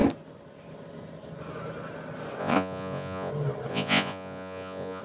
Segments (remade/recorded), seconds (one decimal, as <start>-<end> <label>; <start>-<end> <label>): 0.0-2.4 recorded; 2.4-3.3 remade; 3.3-3.7 recorded; 3.7-5.0 remade